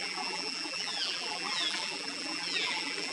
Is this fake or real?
fake